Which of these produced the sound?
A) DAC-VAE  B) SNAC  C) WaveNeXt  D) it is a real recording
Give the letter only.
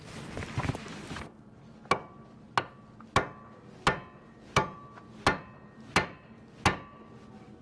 D